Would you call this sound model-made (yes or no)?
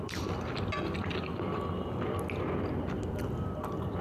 no